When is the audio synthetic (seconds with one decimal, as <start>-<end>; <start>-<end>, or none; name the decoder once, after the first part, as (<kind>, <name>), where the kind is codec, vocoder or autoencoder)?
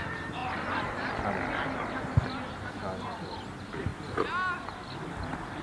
none